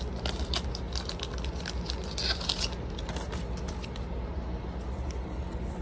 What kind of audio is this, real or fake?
real